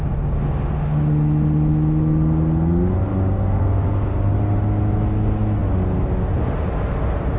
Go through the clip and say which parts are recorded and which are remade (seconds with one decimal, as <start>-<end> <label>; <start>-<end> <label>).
0.0-3.1 recorded; 3.1-4.3 remade; 4.3-7.4 recorded